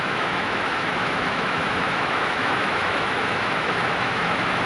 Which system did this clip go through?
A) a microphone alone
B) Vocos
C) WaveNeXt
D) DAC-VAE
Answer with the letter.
D